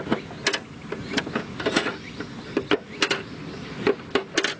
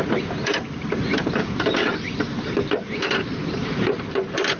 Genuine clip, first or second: first